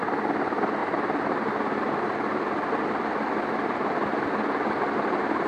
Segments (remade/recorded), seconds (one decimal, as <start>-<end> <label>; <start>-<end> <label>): 0.0-0.8 recorded; 0.8-1.5 remade; 1.5-5.5 recorded